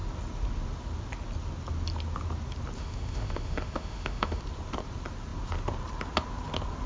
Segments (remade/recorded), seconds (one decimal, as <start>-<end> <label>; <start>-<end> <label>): 0.0-2.8 recorded; 2.8-4.4 remade; 4.4-6.9 recorded